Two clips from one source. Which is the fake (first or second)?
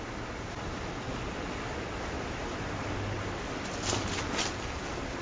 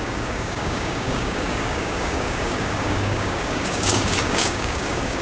second